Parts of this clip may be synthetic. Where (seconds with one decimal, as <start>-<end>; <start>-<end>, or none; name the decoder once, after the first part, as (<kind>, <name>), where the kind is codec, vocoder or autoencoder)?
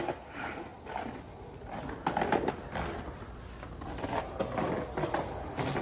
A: none